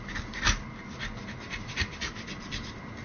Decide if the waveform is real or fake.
real